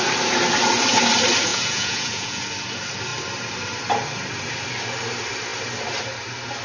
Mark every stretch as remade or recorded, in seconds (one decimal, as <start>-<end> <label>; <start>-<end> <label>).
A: 0.0-1.5 recorded; 1.5-2.4 remade; 2.4-6.6 recorded